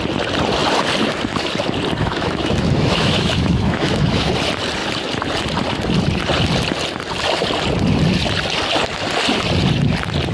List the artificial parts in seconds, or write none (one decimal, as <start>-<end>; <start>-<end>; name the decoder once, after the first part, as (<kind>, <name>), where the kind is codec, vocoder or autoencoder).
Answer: 2.0-4.3 (autoencoder, DAC-VAE)